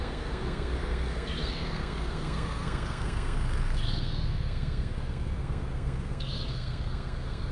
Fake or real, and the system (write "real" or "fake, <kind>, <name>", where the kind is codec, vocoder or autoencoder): fake, codec, SNAC